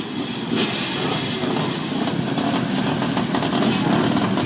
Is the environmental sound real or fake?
real